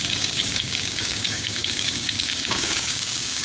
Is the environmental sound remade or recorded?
remade